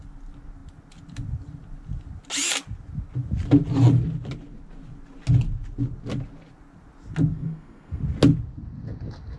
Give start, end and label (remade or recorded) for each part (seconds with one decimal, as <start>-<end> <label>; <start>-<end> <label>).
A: 0.0-7.3 recorded; 7.3-8.0 remade; 8.0-9.4 recorded